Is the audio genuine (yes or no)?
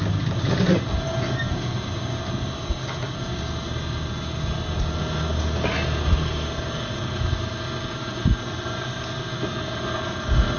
yes